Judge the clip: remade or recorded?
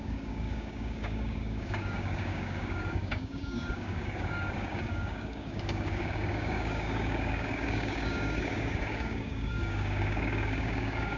remade